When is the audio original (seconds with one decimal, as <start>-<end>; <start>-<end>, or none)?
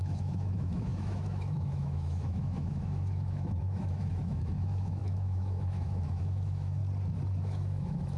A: 6.8-7.4